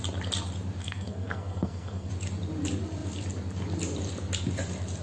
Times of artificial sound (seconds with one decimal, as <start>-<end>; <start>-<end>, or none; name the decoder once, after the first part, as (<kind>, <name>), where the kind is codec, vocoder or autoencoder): 0.8-2.1 (codec, SNAC)